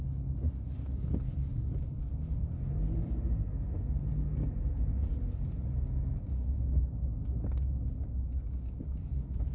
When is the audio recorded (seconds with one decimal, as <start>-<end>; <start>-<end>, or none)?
0.0-9.5